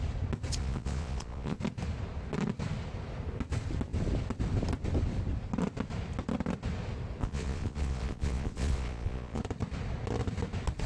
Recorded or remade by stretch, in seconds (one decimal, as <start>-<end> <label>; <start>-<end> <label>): 0.0-0.6 recorded; 0.6-1.6 remade; 1.6-7.2 recorded; 7.2-9.4 remade; 9.4-10.9 recorded